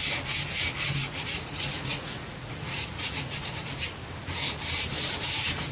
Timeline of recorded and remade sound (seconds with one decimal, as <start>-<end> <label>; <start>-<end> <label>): 0.0-1.0 recorded; 1.0-3.5 remade; 3.5-5.7 recorded